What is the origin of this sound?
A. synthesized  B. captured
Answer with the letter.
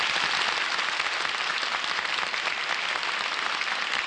B